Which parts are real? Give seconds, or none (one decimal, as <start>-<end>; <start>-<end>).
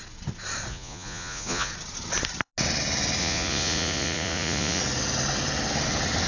0.0-0.7; 1.7-3.2; 4.8-6.3